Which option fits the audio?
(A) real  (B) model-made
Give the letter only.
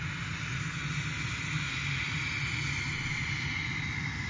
A